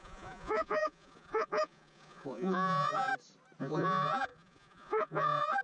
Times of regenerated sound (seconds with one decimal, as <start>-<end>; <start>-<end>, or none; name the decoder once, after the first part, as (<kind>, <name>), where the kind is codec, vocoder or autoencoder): 0.0-3.1 (vocoder, Vocos); 3.6-5.6